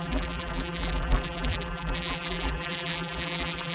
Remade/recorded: remade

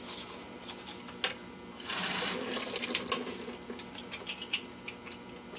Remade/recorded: recorded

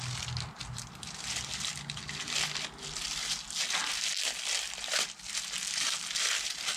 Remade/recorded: recorded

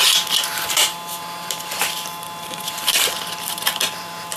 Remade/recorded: remade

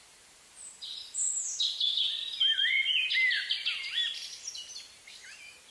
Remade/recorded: remade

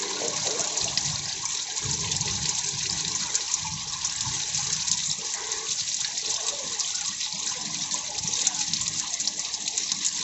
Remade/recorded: recorded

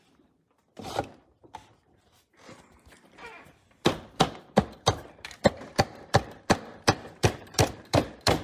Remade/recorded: remade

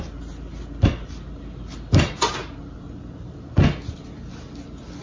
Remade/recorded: recorded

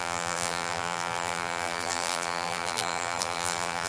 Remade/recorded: remade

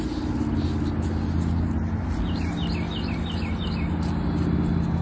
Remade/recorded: recorded